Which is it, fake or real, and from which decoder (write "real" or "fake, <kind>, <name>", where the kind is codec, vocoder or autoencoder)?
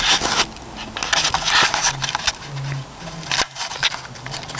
real